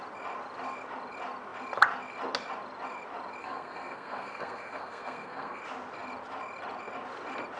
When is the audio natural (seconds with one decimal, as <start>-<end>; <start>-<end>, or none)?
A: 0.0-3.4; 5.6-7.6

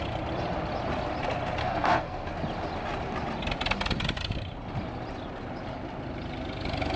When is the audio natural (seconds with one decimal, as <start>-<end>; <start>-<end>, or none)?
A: 0.0-1.6; 2.3-7.0

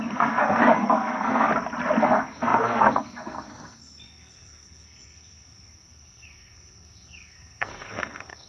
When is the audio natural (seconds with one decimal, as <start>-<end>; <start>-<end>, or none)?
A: 1.5-2.0

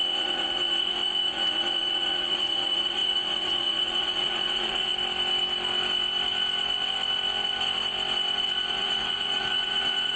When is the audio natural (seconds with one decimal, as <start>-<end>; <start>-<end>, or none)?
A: 4.9-8.7

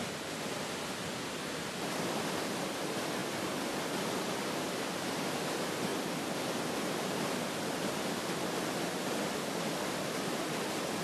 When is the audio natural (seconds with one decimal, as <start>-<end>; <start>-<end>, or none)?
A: 0.0-11.0

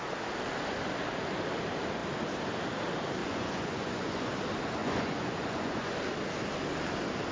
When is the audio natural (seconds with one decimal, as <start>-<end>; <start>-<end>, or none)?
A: 0.0-3.2; 4.3-4.8; 5.9-7.3

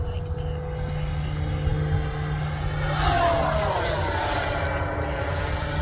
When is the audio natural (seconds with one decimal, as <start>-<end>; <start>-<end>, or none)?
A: 0.0-5.8

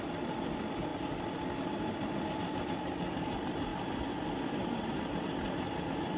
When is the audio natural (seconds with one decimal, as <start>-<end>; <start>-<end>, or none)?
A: 0.0-6.2